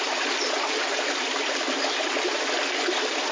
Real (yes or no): yes